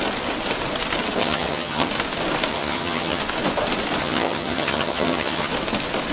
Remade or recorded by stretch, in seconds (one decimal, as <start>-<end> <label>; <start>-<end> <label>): 0.0-1.2 recorded; 1.2-1.9 remade; 1.9-2.5 recorded; 2.5-3.2 remade; 3.2-4.0 recorded; 4.0-5.5 remade; 5.5-6.1 recorded